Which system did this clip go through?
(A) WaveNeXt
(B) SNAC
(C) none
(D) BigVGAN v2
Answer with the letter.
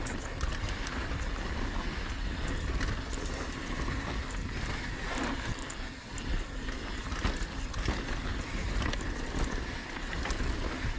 C